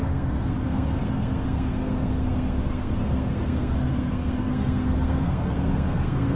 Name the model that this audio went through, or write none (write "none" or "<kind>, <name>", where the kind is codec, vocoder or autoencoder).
codec, SNAC